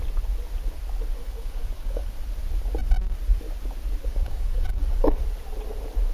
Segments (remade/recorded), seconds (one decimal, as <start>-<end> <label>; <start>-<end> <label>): 0.0-1.2 recorded; 1.2-2.1 remade; 2.1-4.0 recorded; 4.0-5.2 remade; 5.2-6.1 recorded